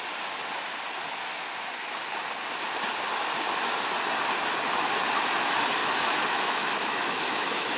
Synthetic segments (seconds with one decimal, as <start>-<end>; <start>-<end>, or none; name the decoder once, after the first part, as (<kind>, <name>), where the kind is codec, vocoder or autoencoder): 5.8-7.8 (autoencoder, DAC-VAE)